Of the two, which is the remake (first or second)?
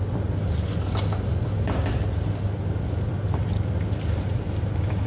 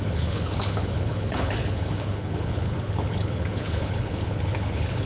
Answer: second